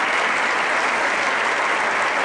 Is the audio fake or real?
real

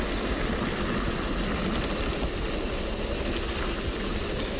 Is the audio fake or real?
real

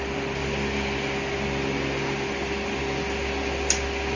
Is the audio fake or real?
real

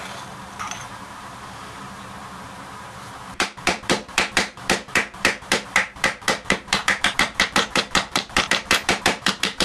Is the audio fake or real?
fake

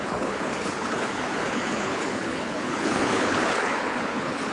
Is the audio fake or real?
fake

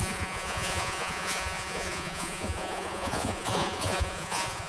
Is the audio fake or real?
fake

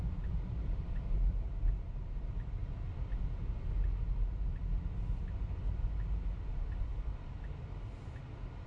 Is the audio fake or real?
real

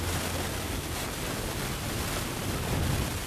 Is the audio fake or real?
real